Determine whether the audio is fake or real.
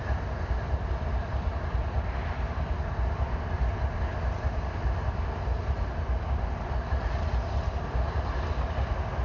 fake